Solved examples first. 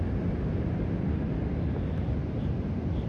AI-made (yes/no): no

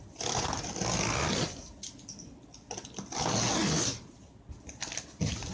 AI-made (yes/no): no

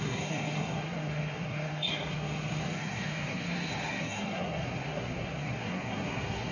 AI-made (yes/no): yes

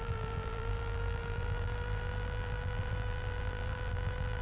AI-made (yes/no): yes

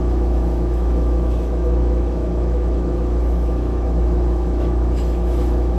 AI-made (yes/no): yes